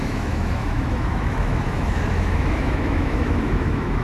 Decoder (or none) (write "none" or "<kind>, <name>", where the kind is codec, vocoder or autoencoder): autoencoder, DAC-VAE